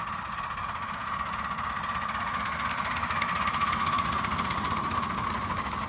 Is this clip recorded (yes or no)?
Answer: yes